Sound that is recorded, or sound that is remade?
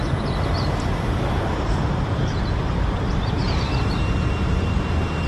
remade